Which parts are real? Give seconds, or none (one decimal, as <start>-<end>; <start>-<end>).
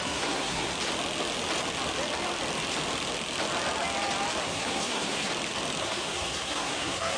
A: 0.7-4.4; 5.3-5.8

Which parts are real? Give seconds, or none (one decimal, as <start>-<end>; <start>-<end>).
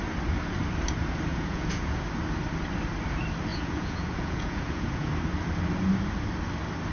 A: 0.0-1.3; 2.0-3.5; 5.1-6.9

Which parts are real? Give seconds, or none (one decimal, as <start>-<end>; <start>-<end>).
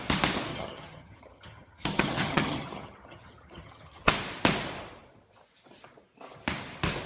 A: 0.0-0.5; 4.1-7.1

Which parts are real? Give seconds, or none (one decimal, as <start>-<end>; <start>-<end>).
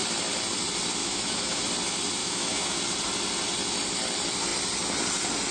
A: 0.0-1.0; 1.6-2.2; 2.8-5.5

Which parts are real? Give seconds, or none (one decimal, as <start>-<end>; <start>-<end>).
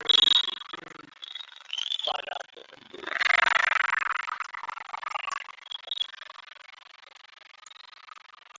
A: 0.0-1.2; 2.1-2.6; 3.2-8.6